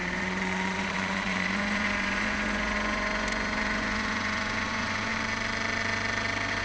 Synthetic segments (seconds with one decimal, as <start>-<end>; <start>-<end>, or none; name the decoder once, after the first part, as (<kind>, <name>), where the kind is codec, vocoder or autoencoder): 0.0-5.1 (vocoder, Vocos)